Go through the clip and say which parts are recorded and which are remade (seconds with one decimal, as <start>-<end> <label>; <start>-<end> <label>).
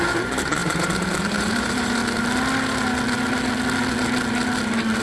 0.0-2.0 remade; 2.0-5.0 recorded